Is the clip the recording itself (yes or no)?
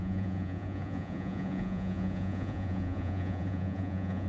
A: no